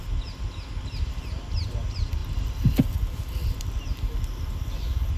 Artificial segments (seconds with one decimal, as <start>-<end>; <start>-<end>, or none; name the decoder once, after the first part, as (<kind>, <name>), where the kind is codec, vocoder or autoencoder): none